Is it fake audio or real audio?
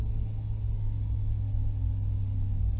real